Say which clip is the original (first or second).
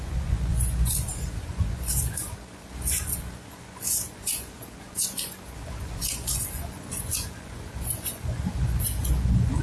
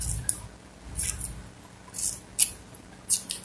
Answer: second